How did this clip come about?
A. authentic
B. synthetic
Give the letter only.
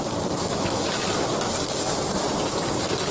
A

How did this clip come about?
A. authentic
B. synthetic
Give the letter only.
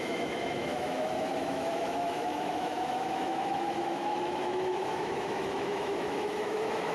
B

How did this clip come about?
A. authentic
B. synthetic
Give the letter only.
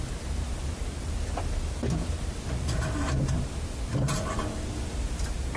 A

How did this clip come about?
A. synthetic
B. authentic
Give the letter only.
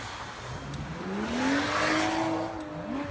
B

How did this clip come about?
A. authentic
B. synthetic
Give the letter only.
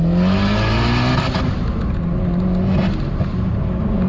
A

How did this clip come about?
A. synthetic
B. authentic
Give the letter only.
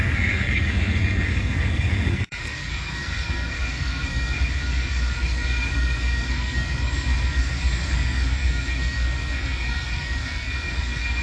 A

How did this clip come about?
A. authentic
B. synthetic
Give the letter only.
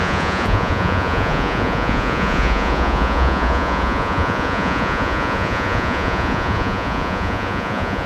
B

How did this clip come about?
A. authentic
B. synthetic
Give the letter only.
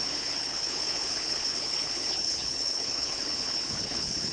B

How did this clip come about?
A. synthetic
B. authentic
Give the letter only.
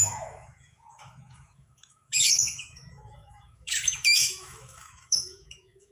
A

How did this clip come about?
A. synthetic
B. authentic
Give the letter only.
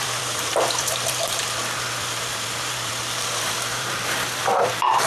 A